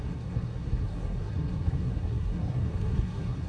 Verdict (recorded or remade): remade